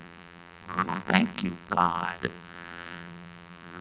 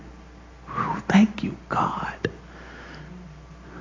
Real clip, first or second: second